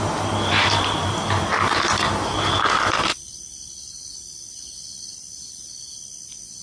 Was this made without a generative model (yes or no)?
yes